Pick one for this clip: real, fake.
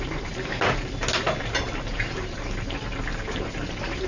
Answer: real